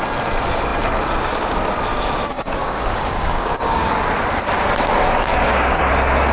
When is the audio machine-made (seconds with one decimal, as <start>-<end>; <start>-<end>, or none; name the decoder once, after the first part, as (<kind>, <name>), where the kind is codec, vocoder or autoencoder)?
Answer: 2.3-3.9 (codec, DAC); 5.3-5.8